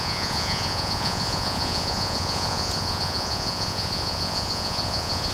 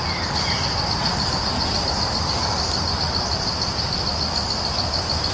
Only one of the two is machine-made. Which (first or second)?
first